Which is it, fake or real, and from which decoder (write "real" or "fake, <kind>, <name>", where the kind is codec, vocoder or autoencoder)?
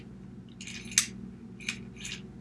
real